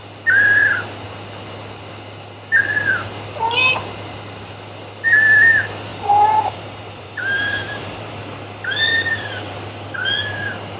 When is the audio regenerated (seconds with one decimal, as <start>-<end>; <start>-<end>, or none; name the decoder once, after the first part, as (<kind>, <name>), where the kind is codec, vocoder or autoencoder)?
5.9-8.1 (vocoder, BigVGAN v2); 8.9-9.6